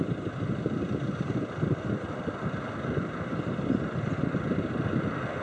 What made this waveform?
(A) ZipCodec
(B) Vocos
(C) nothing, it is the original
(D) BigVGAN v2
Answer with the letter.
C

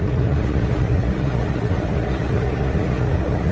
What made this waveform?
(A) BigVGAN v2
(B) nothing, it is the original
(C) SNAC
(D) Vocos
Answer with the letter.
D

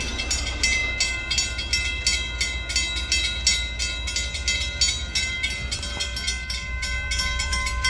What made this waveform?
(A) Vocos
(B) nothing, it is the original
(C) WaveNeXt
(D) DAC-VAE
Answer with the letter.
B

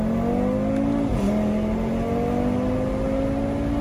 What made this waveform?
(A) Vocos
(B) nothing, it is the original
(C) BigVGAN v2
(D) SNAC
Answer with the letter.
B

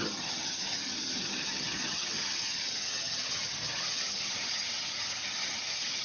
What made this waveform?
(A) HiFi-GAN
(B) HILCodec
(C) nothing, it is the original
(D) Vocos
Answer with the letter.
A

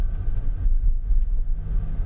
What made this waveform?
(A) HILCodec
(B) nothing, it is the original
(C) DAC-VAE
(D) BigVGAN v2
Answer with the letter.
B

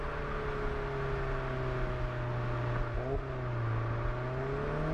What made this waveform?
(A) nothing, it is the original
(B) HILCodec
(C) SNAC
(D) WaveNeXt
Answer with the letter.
A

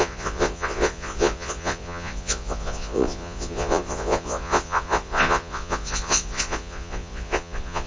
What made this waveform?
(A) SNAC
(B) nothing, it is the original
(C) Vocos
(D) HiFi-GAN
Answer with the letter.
C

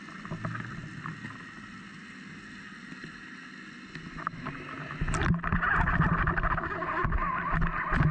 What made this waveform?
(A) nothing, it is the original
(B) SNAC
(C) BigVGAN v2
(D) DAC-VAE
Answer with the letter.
A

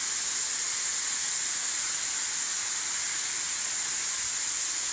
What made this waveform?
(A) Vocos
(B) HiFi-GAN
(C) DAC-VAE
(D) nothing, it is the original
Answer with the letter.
D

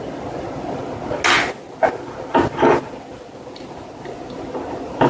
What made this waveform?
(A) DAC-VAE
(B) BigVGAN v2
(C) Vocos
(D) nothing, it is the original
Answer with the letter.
D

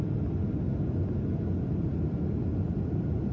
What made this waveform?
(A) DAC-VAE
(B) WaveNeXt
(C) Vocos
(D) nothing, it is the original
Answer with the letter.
D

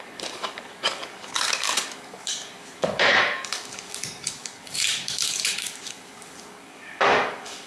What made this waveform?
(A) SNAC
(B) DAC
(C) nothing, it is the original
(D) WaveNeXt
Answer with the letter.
B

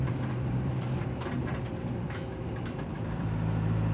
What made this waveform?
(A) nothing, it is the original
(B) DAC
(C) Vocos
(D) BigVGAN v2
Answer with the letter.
D